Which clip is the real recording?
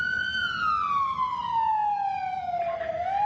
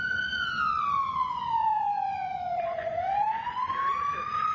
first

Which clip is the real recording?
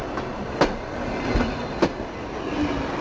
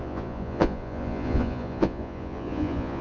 first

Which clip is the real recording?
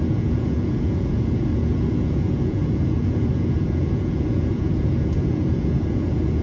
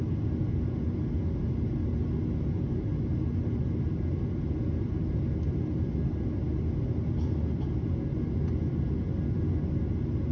second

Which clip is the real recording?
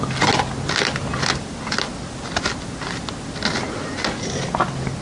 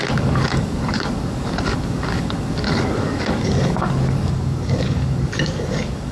first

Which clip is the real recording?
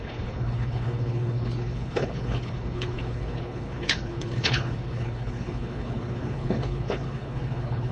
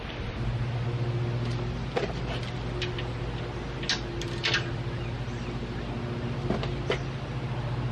second